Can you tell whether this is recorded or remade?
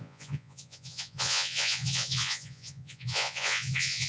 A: remade